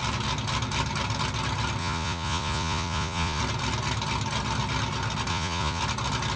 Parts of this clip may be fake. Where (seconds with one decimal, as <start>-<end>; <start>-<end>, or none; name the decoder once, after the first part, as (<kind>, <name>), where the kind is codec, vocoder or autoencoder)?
1.8-3.4 (vocoder, Vocos); 5.3-5.8